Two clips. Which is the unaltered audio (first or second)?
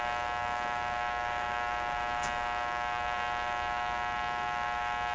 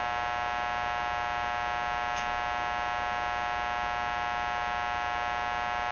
second